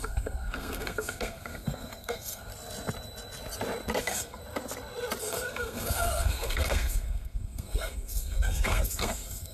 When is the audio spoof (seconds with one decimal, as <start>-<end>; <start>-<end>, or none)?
0.0-2.5; 4.0-4.4; 5.2-9.5